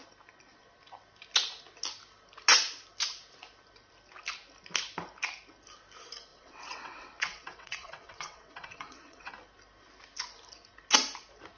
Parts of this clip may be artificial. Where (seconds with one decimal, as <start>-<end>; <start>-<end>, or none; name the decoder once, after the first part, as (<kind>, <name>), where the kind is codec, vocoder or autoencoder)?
6.3-9.3 (vocoder, WaveNeXt)